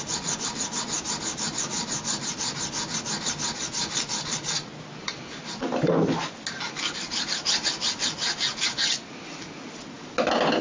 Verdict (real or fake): real